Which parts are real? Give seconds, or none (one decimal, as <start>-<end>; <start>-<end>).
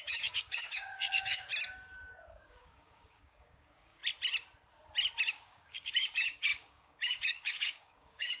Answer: 1.5-2.3; 4.0-5.3